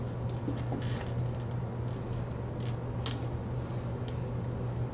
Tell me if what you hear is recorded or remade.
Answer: recorded